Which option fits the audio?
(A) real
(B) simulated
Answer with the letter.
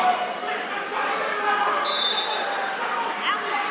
A